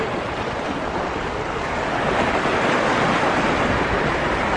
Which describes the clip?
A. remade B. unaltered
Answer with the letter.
B